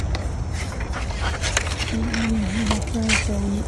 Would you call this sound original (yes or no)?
yes